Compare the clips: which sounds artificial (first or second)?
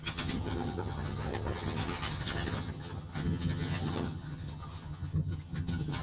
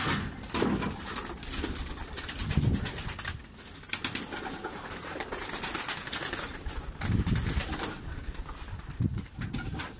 first